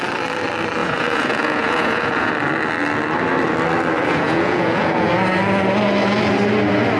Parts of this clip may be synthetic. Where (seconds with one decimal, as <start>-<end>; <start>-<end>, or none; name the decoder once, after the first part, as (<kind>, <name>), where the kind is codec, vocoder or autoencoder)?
0.8-2.3 (vocoder, Vocos); 4.0-5.1